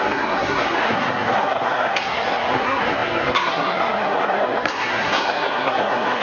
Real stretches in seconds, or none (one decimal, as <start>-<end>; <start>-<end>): none

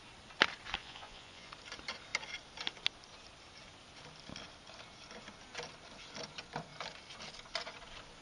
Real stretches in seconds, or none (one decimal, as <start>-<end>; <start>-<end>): 0.0-0.8; 1.5-8.2

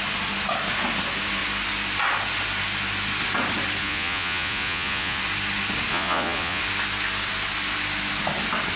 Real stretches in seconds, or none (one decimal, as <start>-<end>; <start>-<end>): 0.0-3.8; 5.2-5.9; 6.6-8.8

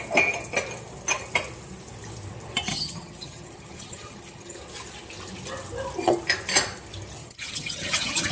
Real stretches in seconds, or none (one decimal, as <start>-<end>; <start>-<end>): 0.0-2.7; 4.6-7.2

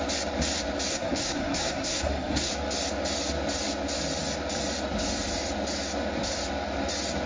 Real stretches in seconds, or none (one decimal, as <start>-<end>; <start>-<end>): 0.0-0.9; 2.5-7.3